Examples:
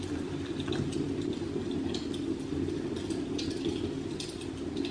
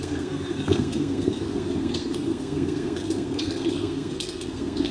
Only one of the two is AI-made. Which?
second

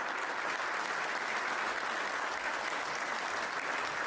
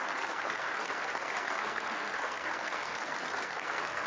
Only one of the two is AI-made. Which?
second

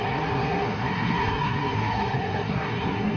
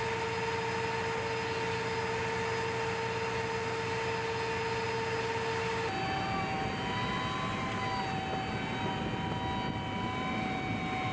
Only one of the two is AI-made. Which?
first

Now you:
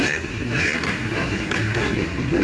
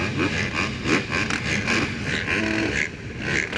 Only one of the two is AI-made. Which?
first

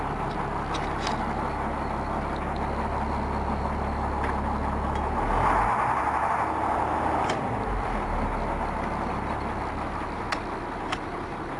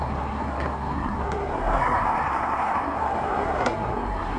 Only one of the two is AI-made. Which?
second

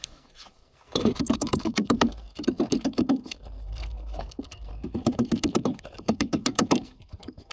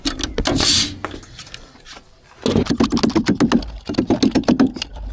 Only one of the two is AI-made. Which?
first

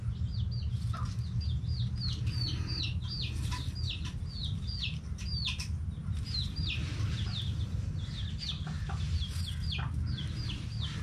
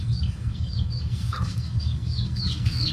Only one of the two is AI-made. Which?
second